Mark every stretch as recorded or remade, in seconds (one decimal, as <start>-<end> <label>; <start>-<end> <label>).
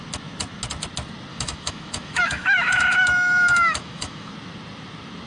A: 0.0-1.3 recorded; 1.3-4.3 remade; 4.3-5.3 recorded